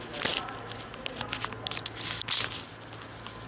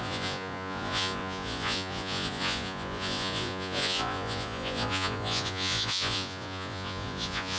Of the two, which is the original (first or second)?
first